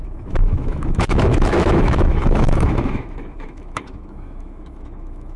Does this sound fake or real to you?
fake